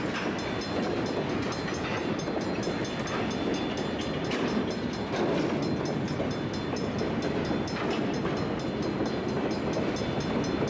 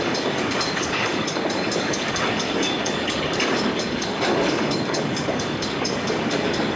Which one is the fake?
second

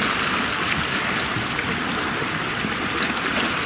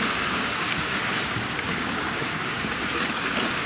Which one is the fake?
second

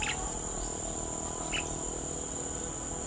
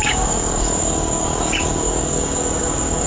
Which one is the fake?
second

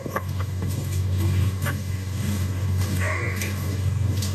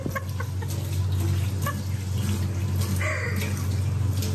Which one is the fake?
first